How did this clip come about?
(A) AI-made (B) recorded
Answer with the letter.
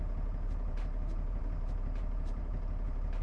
A